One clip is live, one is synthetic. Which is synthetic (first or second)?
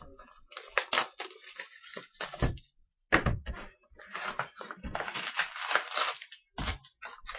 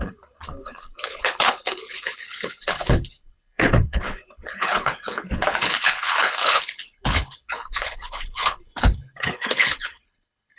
second